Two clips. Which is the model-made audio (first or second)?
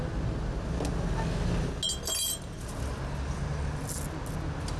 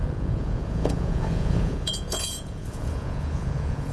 second